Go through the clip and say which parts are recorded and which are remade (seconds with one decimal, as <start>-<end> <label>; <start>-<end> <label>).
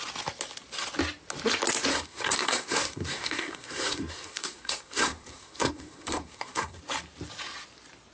0.0-1.9 recorded; 1.9-6.8 remade; 6.8-8.1 recorded